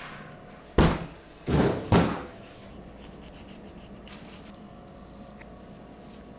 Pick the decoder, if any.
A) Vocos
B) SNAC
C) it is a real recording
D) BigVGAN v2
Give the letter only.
C